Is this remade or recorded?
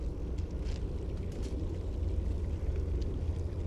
recorded